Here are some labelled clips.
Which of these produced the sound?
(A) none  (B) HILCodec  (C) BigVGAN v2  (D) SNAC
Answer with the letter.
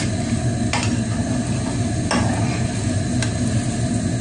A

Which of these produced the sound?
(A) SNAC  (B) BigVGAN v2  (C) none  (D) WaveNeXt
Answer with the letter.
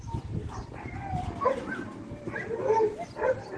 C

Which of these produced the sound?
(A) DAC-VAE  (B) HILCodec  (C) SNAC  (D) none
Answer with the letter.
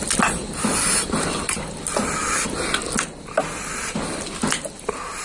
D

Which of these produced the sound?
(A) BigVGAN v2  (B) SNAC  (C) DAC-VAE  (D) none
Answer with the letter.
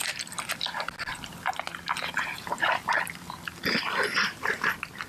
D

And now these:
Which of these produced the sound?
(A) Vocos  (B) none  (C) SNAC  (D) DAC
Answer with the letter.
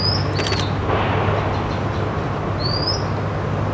B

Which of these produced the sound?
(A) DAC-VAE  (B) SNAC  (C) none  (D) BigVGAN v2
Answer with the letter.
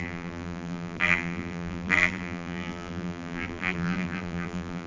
D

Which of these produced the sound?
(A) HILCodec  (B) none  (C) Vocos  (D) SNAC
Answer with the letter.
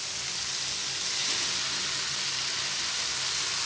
B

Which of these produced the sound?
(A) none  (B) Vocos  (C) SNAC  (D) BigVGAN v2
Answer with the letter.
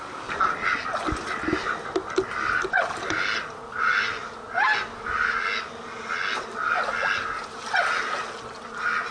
A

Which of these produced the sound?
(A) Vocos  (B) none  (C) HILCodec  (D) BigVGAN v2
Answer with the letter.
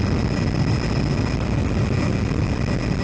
B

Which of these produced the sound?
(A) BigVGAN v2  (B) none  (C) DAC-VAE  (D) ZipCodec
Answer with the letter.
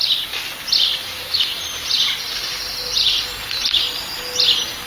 B